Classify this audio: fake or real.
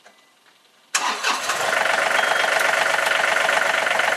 real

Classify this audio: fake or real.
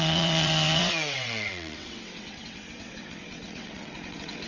fake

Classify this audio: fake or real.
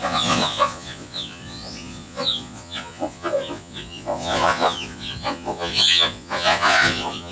fake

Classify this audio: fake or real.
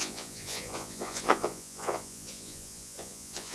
fake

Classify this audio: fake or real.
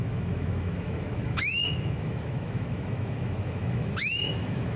fake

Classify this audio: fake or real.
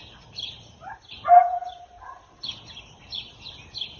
real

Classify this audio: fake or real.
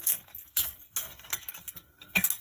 fake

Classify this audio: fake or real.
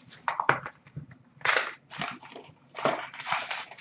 fake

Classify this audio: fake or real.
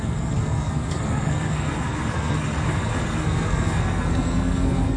fake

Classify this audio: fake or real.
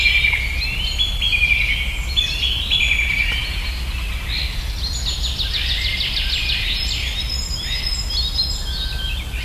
real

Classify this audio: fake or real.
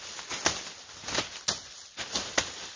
real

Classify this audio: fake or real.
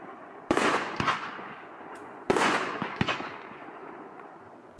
fake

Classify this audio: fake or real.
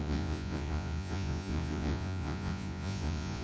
fake